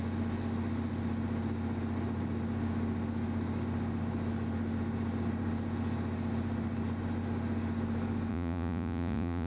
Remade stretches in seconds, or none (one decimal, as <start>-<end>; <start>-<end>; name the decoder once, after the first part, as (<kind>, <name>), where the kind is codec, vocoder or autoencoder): 8.3-9.5 (vocoder, Vocos)